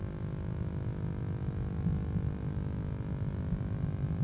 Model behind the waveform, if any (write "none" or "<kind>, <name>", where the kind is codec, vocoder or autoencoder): none